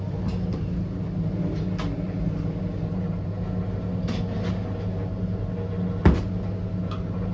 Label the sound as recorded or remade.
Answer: recorded